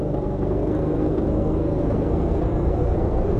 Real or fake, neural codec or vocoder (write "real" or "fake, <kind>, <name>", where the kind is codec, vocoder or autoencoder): fake, codec, SNAC